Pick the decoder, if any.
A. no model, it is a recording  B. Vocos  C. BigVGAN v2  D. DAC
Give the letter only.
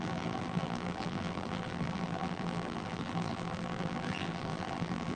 C